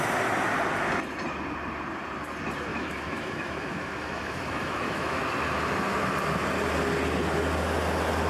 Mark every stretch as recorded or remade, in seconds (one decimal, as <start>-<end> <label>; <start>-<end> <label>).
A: 0.0-2.7 recorded; 2.7-5.2 remade; 5.2-8.3 recorded

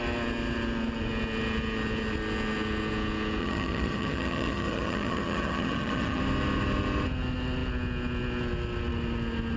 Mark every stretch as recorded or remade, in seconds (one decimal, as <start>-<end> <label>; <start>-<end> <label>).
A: 0.0-3.4 recorded; 3.4-6.2 remade; 6.2-9.6 recorded

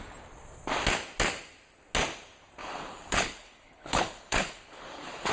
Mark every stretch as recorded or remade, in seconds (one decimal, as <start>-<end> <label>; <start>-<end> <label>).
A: 0.0-2.6 recorded; 2.6-5.3 remade

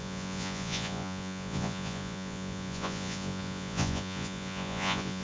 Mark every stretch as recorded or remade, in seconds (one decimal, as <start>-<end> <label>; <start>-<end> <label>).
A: 0.0-5.2 remade